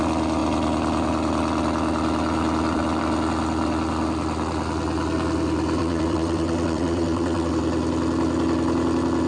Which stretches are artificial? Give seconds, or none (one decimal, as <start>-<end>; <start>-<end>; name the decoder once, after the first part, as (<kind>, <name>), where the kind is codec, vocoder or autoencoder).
5.8-7.5 (vocoder, WaveNeXt)